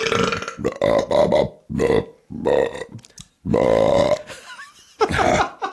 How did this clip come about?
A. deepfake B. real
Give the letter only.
B